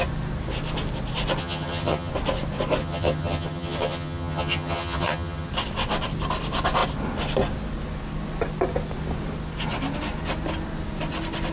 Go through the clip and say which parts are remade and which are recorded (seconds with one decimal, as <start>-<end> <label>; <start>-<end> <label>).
0.0-1.4 recorded; 1.4-2.1 remade; 2.1-2.8 recorded; 2.8-5.5 remade; 5.5-11.5 recorded